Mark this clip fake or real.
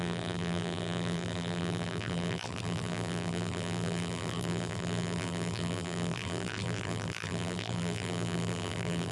fake